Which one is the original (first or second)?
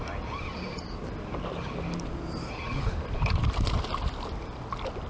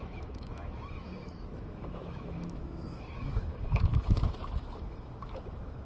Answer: first